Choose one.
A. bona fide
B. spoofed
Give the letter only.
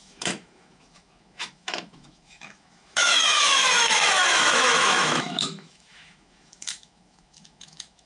B